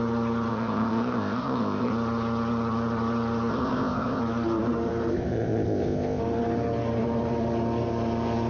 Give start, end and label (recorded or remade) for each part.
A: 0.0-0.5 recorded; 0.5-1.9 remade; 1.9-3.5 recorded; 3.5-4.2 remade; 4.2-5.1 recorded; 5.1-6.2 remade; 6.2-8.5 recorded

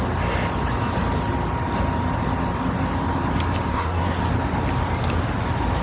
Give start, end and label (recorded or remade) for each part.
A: 0.0-3.7 recorded; 3.7-4.2 remade; 4.2-5.8 recorded